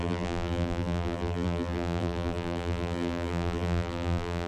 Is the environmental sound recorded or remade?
remade